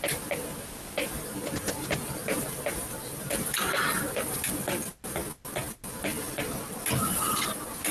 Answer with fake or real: real